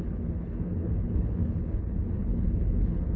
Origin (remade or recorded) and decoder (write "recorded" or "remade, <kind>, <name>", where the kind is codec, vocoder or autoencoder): remade, codec, HILCodec